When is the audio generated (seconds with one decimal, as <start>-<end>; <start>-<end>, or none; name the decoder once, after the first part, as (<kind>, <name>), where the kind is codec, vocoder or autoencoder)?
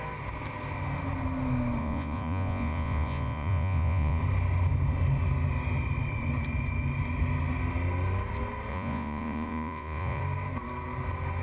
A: 1.8-4.2 (vocoder, Vocos); 8.7-10.2